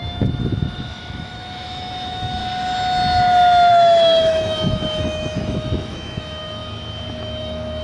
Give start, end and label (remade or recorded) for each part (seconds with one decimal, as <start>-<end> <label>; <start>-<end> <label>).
0.0-2.4 remade; 2.4-3.7 recorded; 3.7-6.6 remade; 6.6-7.2 recorded; 7.2-7.8 remade